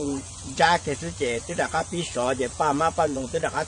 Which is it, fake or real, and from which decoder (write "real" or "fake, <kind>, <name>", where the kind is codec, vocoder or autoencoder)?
fake, vocoder, Vocos